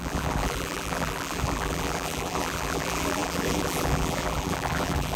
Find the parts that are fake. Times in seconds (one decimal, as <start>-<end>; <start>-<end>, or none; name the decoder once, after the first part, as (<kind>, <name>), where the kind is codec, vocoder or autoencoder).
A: 0.0-5.2 (vocoder, BigVGAN v2)